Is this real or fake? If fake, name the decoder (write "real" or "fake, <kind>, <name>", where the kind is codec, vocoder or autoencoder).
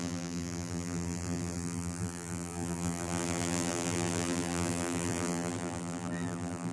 fake, vocoder, BigVGAN v2